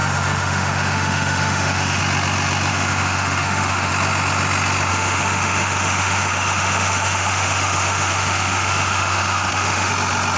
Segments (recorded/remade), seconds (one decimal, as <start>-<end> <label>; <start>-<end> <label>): 0.0-2.0 remade; 2.0-2.7 recorded; 2.7-3.9 remade; 3.9-4.9 recorded; 4.9-9.9 remade; 9.9-10.4 recorded